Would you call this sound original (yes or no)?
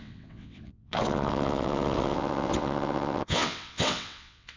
no